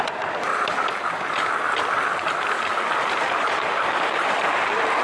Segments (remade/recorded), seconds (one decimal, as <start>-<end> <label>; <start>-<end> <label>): 0.0-0.5 remade; 0.5-3.5 recorded; 3.5-5.0 remade